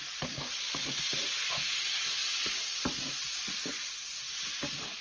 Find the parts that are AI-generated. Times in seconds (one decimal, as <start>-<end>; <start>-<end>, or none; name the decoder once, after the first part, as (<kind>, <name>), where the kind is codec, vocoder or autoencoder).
none